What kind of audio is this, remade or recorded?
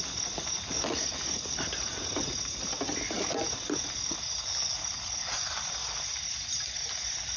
recorded